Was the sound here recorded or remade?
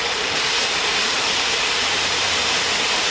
remade